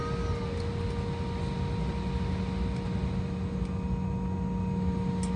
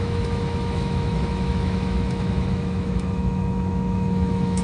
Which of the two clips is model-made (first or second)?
second